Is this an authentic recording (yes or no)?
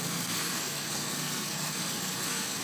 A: no